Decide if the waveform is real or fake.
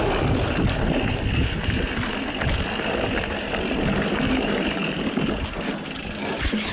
real